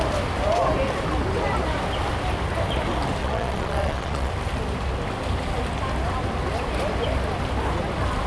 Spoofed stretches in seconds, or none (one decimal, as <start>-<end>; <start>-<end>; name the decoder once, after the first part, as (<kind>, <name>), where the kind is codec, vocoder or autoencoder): 3.2-4.3 (vocoder, Vocos)